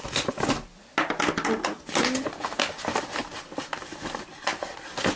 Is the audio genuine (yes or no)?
yes